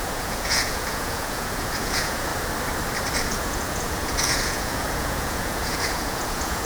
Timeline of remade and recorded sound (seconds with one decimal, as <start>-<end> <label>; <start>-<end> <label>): 0.0-2.3 remade; 2.3-3.2 recorded; 3.2-6.6 remade